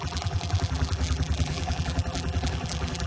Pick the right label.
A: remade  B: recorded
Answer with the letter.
A